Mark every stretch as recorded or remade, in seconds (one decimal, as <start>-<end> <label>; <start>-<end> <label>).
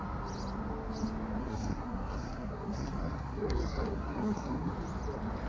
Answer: 0.0-1.4 recorded; 1.4-4.7 remade; 4.7-5.5 recorded